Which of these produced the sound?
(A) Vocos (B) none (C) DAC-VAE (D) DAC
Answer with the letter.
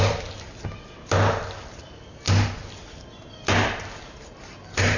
B